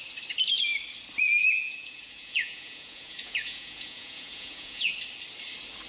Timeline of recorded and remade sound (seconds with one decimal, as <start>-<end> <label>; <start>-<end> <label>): 0.0-1.4 recorded; 1.4-4.9 remade; 4.9-5.9 recorded